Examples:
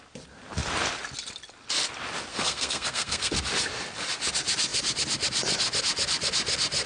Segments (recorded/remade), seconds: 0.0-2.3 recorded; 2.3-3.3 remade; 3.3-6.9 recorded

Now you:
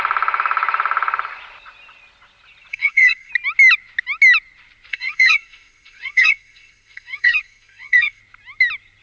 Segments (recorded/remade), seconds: 0.0-2.7 recorded; 2.7-3.3 remade; 3.3-4.9 recorded; 4.9-8.2 remade; 8.2-9.0 recorded